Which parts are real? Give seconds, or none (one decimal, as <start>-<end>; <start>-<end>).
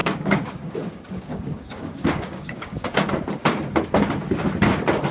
3.1-5.1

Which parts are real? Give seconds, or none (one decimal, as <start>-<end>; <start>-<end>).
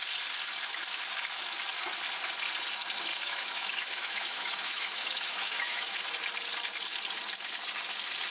0.0-3.1; 6.0-8.3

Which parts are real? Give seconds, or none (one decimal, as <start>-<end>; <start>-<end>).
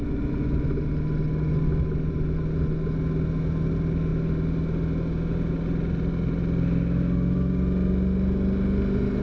0.0-9.2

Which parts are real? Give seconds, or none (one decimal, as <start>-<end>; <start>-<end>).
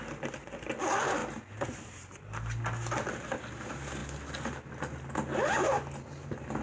0.0-6.6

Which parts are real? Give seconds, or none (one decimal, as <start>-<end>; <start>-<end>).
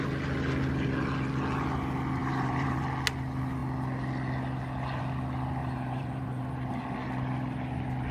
0.0-2.2; 2.8-5.6; 6.4-8.1